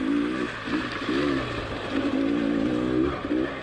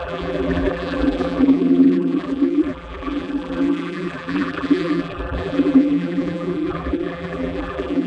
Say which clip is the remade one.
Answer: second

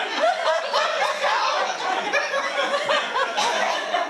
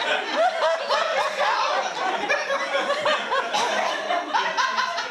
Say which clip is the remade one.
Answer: first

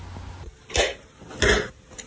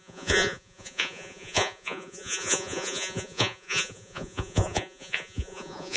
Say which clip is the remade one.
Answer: second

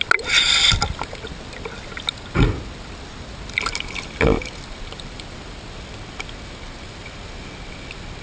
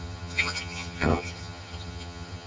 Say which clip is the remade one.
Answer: second